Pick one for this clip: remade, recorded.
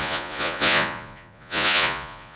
remade